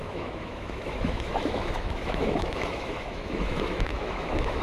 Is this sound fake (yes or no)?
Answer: yes